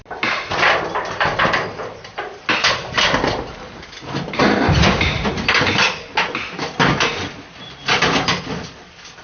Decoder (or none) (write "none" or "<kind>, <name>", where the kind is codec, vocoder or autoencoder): none